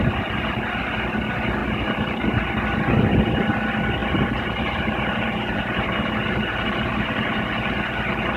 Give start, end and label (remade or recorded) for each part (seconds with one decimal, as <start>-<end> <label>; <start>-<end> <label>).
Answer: 0.0-1.6 recorded; 1.6-2.2 remade; 2.2-4.0 recorded; 4.0-8.4 remade